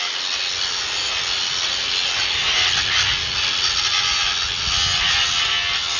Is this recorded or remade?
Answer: recorded